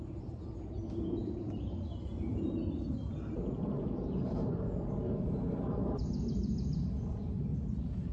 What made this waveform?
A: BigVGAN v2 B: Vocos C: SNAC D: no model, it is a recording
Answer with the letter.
A